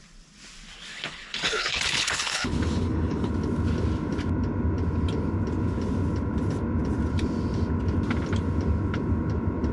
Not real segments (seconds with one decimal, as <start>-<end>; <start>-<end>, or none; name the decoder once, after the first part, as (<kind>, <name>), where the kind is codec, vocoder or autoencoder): 0.9-3.3 (codec, HILCodec)